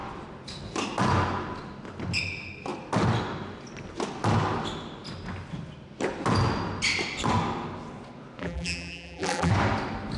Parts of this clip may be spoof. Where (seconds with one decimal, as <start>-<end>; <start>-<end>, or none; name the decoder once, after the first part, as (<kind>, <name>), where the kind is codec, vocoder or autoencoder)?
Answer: 8.4-9.5 (vocoder, BigVGAN v2)